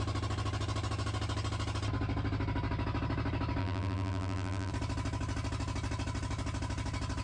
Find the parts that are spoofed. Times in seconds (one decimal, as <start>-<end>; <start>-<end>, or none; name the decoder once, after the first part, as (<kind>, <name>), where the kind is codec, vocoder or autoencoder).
3.6-4.7 (vocoder, BigVGAN v2)